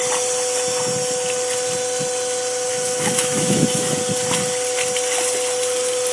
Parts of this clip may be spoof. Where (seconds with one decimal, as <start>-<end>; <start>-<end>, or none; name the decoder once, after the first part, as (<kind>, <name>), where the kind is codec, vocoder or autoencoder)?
2.7-4.0 (autoencoder, DAC-VAE)